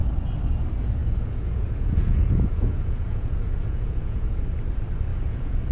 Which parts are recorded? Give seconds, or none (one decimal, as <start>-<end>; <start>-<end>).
0.0-1.0; 4.4-5.1